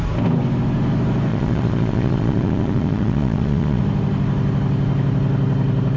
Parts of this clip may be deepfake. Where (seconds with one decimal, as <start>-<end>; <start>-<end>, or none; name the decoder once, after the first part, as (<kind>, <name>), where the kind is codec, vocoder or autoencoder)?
1.3-3.8 (vocoder, Vocos)